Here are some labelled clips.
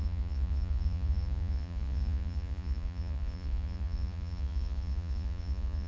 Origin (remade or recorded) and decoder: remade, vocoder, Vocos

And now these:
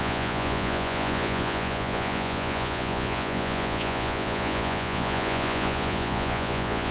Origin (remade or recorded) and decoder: remade, vocoder, Vocos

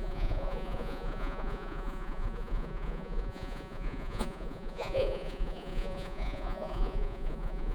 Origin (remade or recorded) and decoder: remade, vocoder, Vocos